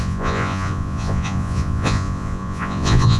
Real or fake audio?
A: fake